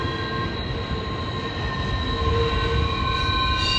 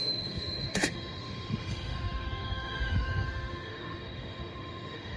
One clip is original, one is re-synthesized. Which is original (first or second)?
first